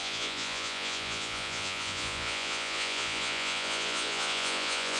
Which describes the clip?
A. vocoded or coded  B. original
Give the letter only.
A